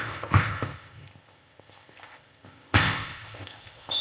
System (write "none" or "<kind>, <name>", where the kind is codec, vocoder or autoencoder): codec, ZipCodec